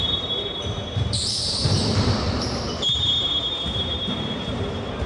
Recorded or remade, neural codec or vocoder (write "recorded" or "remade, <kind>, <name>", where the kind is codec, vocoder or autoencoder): remade, vocoder, BigVGAN v2